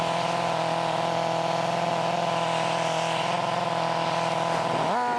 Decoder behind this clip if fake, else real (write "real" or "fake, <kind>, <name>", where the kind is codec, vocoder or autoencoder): real